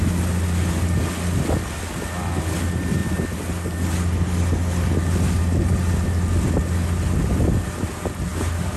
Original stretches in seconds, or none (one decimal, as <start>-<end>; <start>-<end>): 0.0-8.8